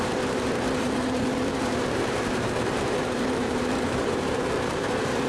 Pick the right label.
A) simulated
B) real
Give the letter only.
A